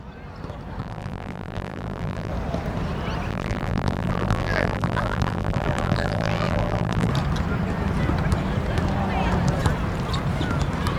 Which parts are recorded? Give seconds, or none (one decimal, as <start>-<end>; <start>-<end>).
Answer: 0.0-0.8; 2.3-3.3; 7.1-11.0